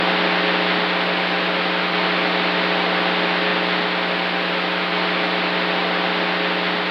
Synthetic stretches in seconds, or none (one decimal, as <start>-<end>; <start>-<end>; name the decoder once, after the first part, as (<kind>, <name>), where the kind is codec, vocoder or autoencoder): none